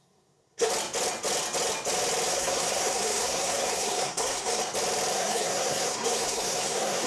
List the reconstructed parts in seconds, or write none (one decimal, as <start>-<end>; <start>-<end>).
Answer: 0.0-0.7; 2.3-4.6; 5.1-7.1